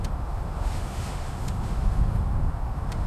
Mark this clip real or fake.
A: fake